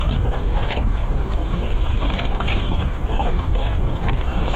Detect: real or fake fake